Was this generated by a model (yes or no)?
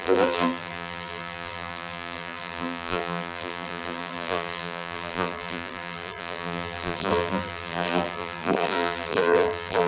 yes